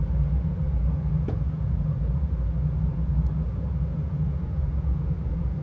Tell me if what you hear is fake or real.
fake